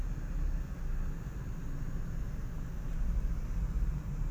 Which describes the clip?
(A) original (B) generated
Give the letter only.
A